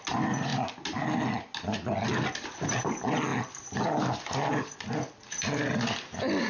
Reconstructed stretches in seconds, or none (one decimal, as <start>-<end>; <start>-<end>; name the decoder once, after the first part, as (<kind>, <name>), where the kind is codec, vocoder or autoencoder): none